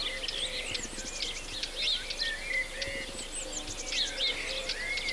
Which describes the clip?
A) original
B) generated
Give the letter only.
A